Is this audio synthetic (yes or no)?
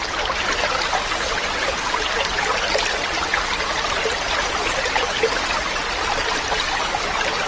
no